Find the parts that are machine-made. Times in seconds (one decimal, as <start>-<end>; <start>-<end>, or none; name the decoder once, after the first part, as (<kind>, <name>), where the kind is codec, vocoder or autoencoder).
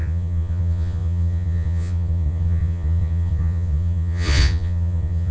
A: 0.0-5.3 (vocoder, Vocos)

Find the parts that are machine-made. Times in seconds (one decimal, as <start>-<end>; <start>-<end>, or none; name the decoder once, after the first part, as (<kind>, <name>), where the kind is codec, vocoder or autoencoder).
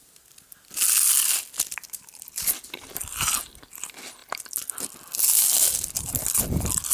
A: none